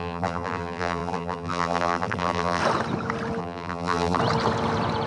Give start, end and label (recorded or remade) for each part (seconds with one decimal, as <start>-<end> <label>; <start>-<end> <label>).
0.0-2.6 remade; 2.6-3.4 recorded; 3.4-4.2 remade; 4.2-5.1 recorded